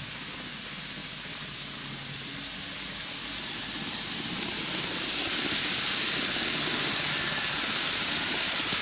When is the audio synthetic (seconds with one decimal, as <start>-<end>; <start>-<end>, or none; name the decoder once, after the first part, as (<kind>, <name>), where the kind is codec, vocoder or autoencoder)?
none